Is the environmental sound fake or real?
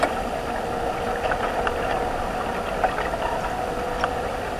real